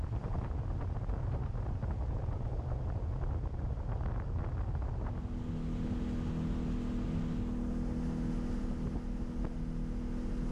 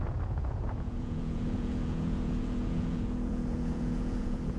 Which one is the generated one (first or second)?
second